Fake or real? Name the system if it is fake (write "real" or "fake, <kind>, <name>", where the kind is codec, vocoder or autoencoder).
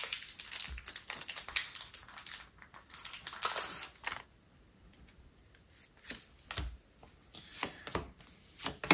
real